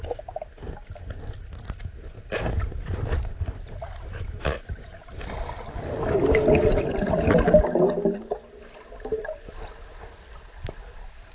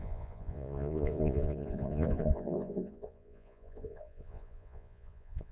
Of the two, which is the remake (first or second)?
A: second